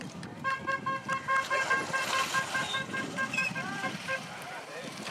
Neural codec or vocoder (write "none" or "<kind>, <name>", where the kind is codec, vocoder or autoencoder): vocoder, BigVGAN v2